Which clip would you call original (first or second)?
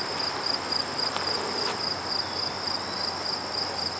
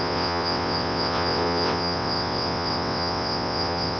first